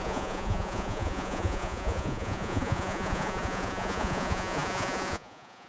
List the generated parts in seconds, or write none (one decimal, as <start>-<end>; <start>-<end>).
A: 0.0-5.7